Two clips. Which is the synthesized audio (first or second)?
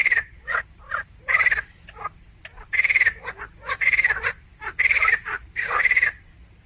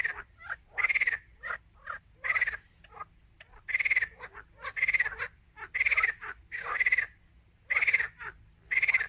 first